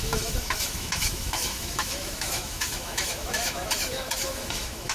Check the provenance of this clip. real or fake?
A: fake